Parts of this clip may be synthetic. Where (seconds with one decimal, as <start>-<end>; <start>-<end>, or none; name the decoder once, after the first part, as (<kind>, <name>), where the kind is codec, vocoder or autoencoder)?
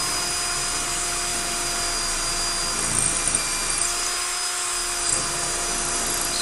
none